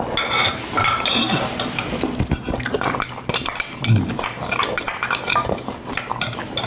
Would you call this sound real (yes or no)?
yes